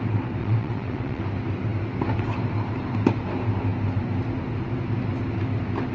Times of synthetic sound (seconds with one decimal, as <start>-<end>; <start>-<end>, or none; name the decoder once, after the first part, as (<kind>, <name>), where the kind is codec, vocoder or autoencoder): 0.4-1.2 (vocoder, WaveNeXt)